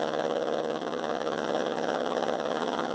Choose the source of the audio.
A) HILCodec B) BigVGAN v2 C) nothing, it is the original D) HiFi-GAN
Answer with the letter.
D